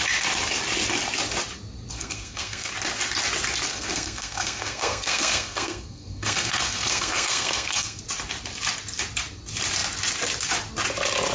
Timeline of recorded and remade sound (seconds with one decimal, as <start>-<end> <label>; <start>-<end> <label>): 0.0-1.9 recorded; 1.9-2.7 remade; 2.7-3.7 recorded; 3.7-8.0 remade; 8.0-11.3 recorded